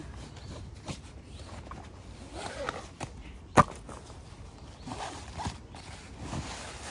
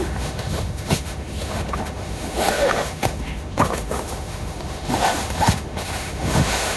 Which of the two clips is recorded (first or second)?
first